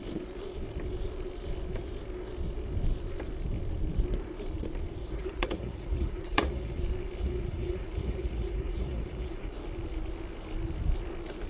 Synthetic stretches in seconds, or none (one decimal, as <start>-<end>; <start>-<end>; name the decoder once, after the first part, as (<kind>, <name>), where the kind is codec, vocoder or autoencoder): 5.0-6.8 (vocoder, Vocos); 7.2-9.6